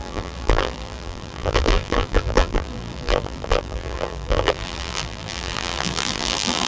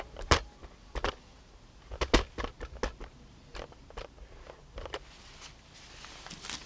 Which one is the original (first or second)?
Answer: second